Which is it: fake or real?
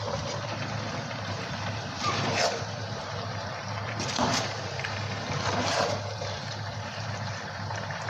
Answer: fake